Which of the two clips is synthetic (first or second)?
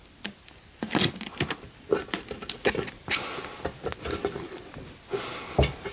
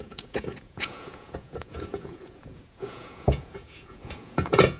second